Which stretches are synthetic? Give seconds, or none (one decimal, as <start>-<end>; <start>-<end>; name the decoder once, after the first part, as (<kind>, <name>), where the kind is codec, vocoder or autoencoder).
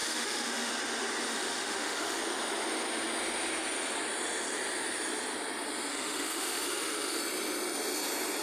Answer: 0.0-0.7 (autoencoder, DAC-VAE); 1.3-2.2; 5.9-7.2